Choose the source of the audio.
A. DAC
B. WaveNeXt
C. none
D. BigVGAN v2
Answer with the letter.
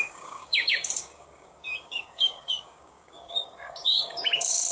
A